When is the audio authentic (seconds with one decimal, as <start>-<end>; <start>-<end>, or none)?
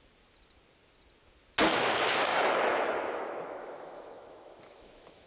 0.0-2.3